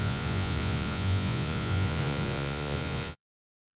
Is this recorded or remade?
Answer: remade